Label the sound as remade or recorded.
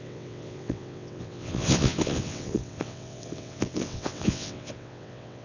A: remade